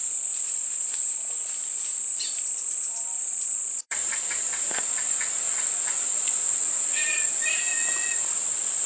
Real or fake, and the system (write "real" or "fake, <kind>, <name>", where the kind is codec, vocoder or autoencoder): fake, vocoder, BigVGAN v2